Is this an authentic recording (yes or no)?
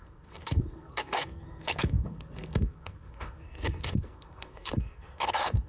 no